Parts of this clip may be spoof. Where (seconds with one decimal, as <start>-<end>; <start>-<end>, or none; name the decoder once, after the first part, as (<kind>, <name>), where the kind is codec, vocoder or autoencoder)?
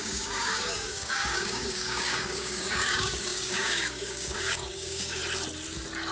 0.0-5.2 (codec, DAC)